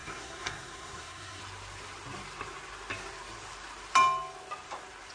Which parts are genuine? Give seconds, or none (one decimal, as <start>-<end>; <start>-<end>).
1.4-5.1